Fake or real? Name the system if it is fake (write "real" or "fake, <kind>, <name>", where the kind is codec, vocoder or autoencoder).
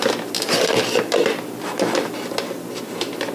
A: real